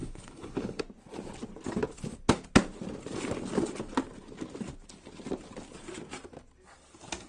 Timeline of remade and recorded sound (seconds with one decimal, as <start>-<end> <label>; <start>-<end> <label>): 0.0-0.8 remade; 0.8-7.3 recorded